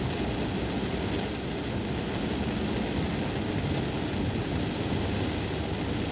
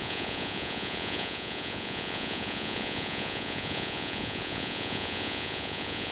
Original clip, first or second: first